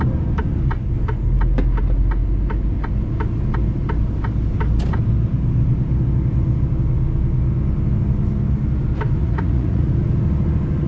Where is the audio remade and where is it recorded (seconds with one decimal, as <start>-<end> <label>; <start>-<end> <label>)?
0.0-9.2 recorded; 9.2-9.9 remade; 9.9-10.9 recorded